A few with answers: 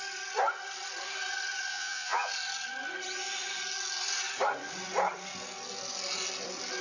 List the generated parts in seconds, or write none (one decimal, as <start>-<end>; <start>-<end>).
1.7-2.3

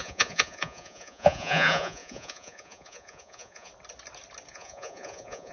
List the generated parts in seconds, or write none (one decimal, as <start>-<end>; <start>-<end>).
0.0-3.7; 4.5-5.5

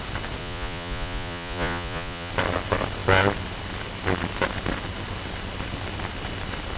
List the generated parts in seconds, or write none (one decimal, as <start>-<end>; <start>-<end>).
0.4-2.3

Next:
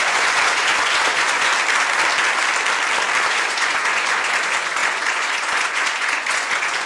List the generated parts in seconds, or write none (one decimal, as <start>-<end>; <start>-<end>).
0.0-1.5; 3.3-6.9

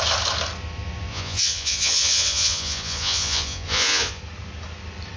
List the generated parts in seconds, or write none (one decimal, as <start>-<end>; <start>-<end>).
1.1-4.2

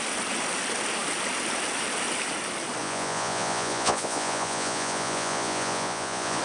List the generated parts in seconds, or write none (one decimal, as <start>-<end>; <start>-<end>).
2.8-6.4

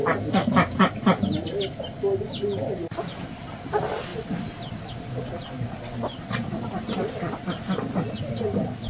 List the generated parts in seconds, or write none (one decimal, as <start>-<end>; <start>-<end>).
none

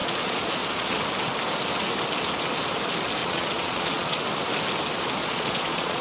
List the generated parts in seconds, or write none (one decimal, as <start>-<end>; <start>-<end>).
0.0-1.0; 3.2-4.2; 5.2-6.0